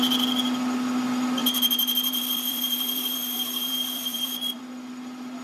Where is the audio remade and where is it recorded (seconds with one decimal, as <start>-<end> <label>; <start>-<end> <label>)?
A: 0.0-1.4 recorded; 1.4-4.6 remade; 4.6-5.4 recorded